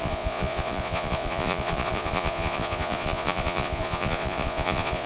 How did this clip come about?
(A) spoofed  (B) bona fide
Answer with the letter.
A